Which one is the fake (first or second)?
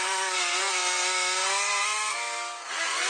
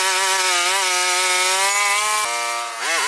first